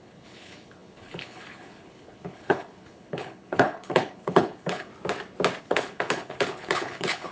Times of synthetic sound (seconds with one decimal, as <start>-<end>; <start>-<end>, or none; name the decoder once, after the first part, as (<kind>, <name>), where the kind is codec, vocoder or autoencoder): 0.0-4.9 (codec, HILCodec); 5.6-7.3